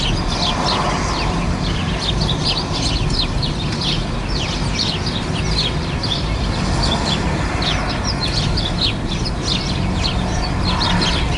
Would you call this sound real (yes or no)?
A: yes